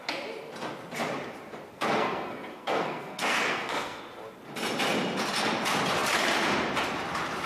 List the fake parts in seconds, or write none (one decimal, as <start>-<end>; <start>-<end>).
1.7-4.0